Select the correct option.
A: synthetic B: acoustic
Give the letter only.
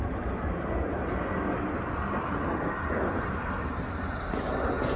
B